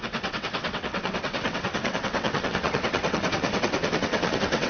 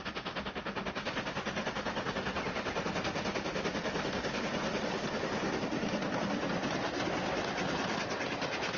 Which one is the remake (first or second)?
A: first